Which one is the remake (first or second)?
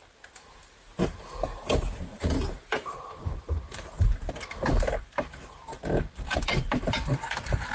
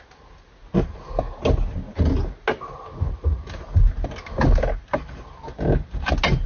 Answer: first